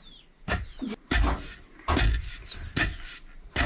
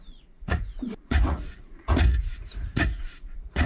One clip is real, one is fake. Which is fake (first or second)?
second